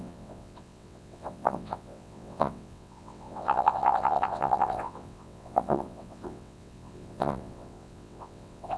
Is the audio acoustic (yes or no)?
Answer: no